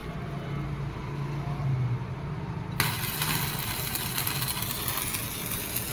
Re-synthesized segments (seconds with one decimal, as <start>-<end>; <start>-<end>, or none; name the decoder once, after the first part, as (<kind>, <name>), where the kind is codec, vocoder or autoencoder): none

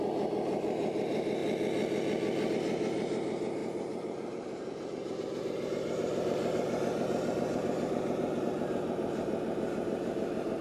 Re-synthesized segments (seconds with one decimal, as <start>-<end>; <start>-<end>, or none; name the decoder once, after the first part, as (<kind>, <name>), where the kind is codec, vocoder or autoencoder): 0.0-1.4 (vocoder, BigVGAN v2); 2.5-10.6

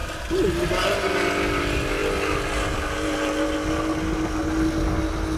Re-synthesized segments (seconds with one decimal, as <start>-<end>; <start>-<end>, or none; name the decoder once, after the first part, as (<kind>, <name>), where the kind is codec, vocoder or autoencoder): none

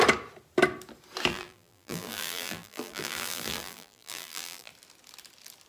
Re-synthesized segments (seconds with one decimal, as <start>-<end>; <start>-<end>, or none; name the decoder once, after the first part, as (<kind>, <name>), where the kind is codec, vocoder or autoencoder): 1.3-4.7 (vocoder, BigVGAN v2)

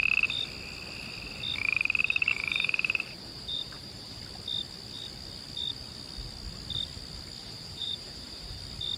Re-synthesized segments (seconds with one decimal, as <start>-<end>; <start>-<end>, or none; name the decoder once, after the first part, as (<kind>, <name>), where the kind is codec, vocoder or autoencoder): 2.0-4.2 (vocoder, BigVGAN v2); 7.4-8.6

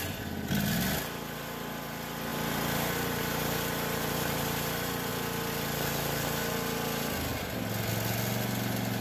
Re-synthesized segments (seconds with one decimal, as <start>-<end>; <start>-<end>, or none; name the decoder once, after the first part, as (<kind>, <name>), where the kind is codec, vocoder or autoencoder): 2.3-5.1 (vocoder, BigVGAN v2)